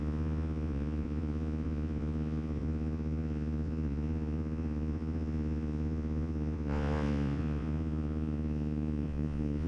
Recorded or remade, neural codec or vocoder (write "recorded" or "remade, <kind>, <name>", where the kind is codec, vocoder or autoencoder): remade, vocoder, Vocos